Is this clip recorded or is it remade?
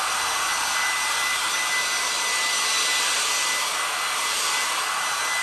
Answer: recorded